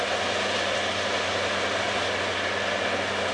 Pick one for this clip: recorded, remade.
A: recorded